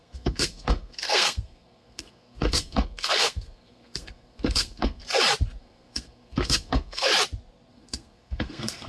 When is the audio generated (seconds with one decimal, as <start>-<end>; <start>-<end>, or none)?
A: 0.0-5.0; 5.6-7.1; 7.7-8.9